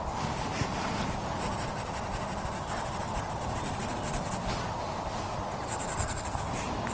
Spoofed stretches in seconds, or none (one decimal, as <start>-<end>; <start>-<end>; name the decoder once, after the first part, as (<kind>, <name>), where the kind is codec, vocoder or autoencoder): 6.0-6.5 (codec, SNAC)